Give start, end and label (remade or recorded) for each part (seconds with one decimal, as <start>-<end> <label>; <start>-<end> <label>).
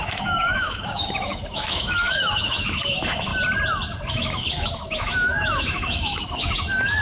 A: 0.0-3.3 remade; 3.3-4.1 recorded; 4.1-7.0 remade